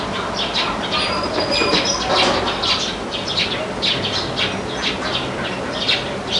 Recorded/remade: recorded